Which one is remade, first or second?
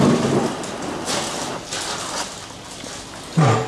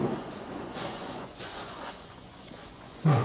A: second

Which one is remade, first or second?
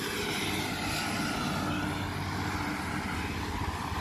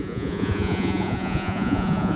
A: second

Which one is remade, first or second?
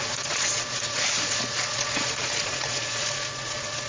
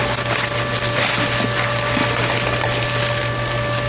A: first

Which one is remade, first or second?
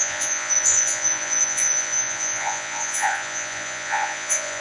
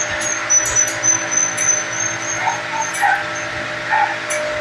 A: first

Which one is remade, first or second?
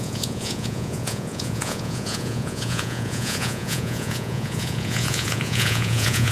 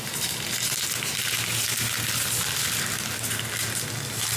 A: first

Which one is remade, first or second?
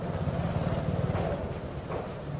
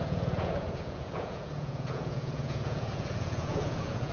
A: second